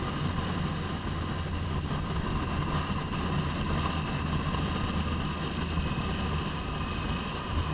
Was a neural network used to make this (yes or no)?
no